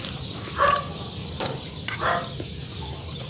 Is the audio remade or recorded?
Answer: remade